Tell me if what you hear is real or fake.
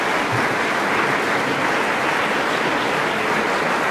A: real